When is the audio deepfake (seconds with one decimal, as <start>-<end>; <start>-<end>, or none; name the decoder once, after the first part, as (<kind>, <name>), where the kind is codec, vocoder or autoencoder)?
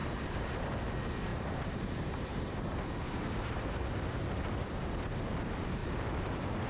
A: 0.0-0.6 (vocoder, BigVGAN v2); 1.3-3.6; 5.8-6.7